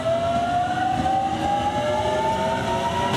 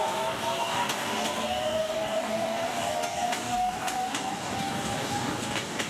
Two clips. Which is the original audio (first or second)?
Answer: first